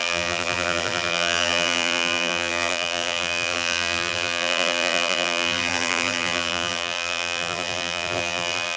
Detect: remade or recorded remade